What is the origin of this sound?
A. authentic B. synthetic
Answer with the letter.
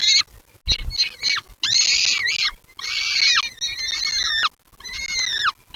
A